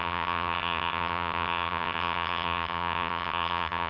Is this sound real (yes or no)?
no